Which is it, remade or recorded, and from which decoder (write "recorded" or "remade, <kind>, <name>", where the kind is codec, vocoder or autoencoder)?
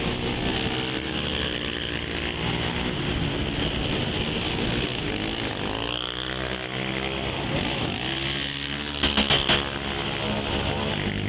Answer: recorded